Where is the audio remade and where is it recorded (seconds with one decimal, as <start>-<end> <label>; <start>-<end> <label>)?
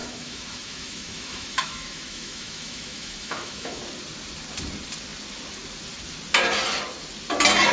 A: 0.0-3.8 remade; 3.8-7.7 recorded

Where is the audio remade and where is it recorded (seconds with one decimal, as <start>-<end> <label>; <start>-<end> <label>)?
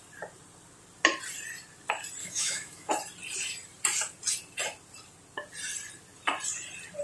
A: 0.0-2.2 recorded; 2.2-2.9 remade; 2.9-7.0 recorded